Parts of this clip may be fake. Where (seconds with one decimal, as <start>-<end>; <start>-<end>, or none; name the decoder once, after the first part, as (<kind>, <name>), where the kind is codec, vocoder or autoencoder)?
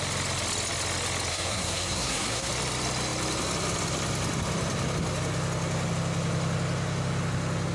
1.3-2.5 (codec, SNAC)